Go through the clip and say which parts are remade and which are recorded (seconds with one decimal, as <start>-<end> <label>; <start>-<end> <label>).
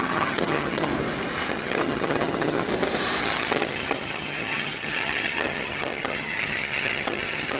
0.0-0.9 remade; 0.9-1.5 recorded; 1.5-2.7 remade; 2.7-3.2 recorded; 3.2-7.6 remade